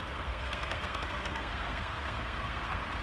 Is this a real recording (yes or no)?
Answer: no